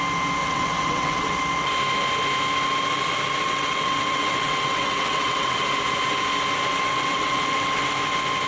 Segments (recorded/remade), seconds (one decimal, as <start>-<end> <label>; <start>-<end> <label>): 0.0-0.4 recorded; 0.4-1.4 remade; 1.4-3.4 recorded; 3.4-5.6 remade; 5.6-6.7 recorded; 6.7-7.8 remade; 7.8-8.5 recorded